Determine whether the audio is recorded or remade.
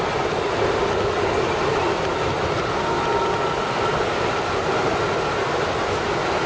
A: recorded